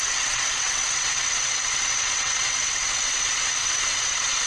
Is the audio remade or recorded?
remade